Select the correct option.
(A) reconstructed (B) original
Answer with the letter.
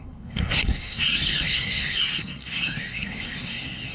A